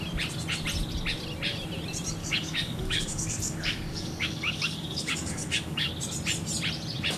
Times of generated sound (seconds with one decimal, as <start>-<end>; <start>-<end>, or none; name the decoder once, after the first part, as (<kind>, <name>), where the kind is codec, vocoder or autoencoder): 2.2-5.9 (codec, DAC)